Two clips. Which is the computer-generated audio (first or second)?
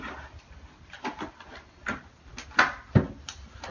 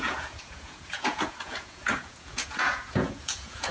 second